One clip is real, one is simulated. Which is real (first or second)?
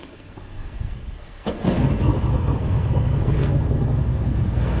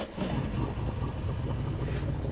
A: second